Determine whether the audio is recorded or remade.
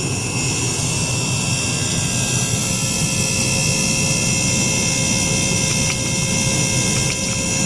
recorded